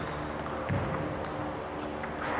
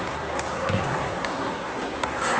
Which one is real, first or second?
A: first